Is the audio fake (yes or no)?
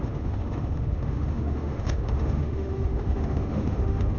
yes